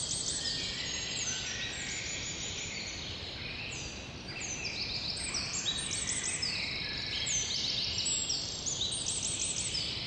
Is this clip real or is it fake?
real